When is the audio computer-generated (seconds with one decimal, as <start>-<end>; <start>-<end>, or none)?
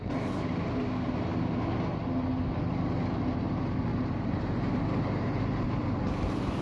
3.9-6.0